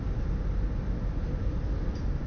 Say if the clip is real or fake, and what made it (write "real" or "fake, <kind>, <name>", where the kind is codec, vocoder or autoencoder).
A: real